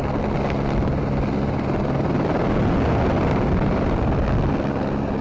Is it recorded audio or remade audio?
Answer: recorded